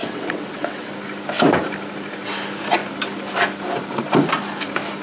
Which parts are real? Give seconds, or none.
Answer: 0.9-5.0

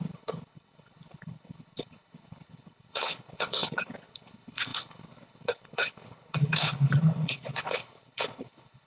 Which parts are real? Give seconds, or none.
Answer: none